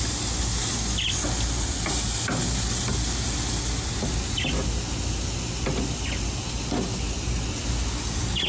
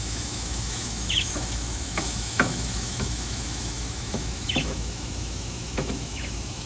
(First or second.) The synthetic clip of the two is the second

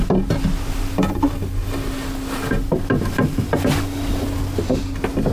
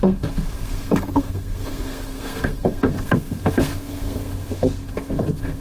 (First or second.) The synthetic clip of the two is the second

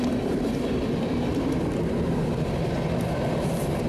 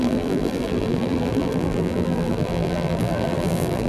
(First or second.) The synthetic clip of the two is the second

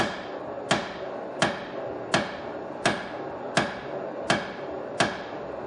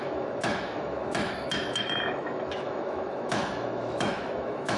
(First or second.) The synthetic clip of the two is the second